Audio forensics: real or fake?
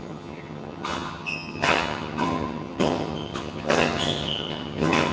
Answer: fake